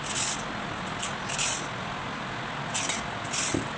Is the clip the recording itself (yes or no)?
yes